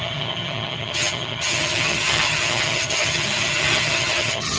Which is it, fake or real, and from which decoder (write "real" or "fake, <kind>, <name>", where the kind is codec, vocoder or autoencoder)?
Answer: fake, vocoder, HiFi-GAN